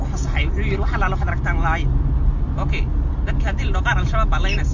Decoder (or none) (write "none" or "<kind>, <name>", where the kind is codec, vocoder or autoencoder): none